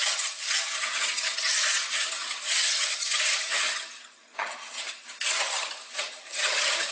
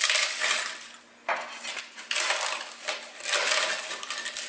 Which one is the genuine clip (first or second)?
second